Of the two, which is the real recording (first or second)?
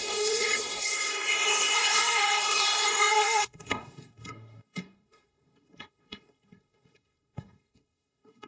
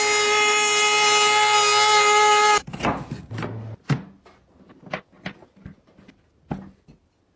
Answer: second